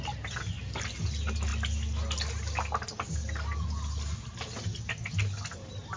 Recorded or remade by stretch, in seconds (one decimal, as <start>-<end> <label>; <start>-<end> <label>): 0.0-6.0 recorded